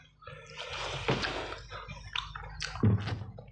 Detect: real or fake real